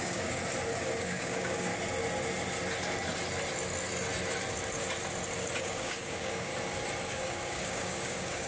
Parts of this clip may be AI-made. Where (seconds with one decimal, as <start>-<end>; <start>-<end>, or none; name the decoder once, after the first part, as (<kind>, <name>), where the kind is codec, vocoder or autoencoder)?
0.0-0.4 (codec, DAC); 1.0-1.7; 5.6-6.5; 7.1-8.5